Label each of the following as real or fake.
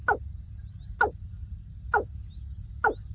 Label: real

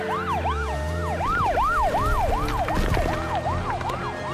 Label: real